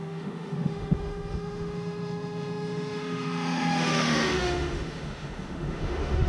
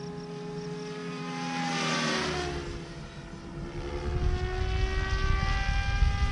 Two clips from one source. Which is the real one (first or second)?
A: second